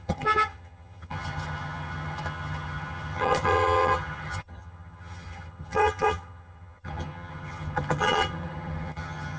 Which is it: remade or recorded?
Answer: remade